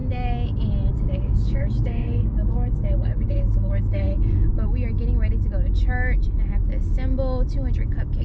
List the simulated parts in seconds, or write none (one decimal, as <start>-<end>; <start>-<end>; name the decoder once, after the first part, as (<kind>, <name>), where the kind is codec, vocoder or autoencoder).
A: 0.9-4.1 (codec, DAC)